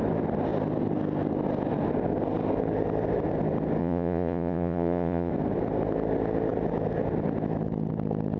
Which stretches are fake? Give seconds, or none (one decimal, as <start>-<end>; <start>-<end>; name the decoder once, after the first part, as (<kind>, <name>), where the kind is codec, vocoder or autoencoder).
3.8-5.3 (vocoder, Vocos)